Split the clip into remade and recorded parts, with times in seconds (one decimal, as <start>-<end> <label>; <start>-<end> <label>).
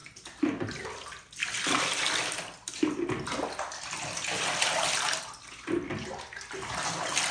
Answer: 0.0-0.7 remade; 0.7-1.4 recorded; 1.4-5.2 remade; 5.2-7.3 recorded